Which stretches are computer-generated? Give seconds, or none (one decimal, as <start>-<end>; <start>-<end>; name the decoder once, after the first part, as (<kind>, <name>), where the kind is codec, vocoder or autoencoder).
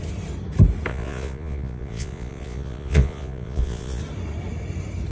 0.9-4.0 (vocoder, Vocos)